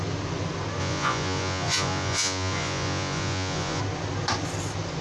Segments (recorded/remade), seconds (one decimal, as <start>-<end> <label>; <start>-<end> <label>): 0.0-0.8 recorded; 0.8-3.8 remade; 3.8-5.0 recorded